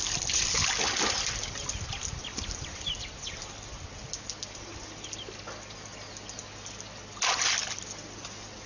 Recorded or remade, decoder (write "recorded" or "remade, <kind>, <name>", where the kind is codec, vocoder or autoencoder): recorded